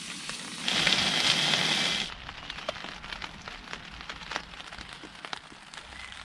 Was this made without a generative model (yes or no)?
yes